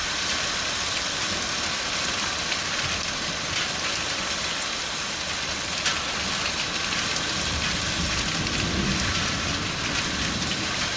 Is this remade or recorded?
recorded